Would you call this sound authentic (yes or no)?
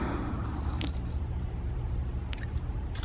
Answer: no